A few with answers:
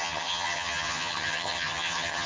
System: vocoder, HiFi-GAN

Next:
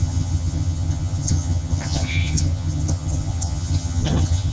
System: vocoder, HiFi-GAN